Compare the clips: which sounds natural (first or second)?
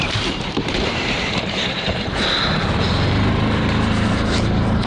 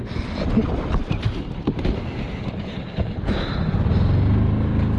second